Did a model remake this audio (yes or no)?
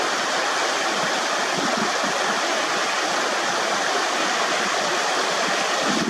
no